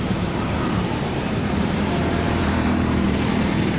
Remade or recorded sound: remade